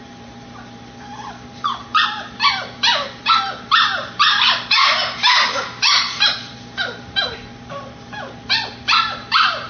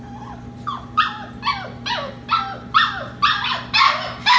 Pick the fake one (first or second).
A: first